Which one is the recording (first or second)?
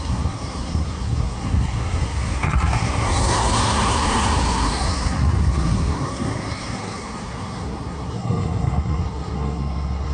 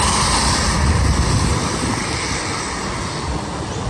second